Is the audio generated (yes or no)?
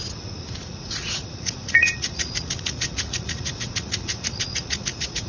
yes